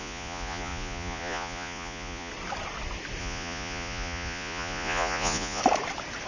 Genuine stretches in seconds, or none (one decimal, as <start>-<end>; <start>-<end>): 2.3-3.2; 5.6-6.3